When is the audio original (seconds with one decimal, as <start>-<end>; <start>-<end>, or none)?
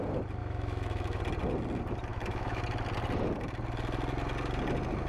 0.0-0.4; 1.2-2.1; 2.6-5.1